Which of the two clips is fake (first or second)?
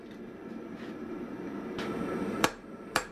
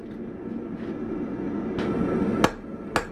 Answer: first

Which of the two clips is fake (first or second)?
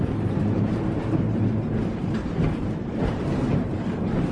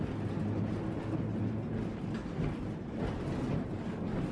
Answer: first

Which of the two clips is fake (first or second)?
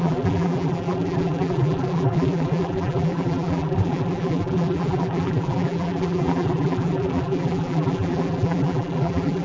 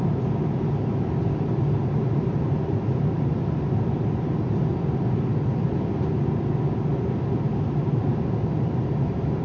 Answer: first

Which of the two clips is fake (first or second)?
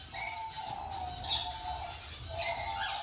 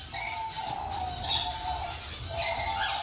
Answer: second